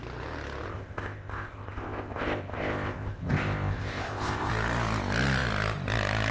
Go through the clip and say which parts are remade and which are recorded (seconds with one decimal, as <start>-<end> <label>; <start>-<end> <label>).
0.0-0.7 recorded; 0.7-4.5 remade; 4.5-6.3 recorded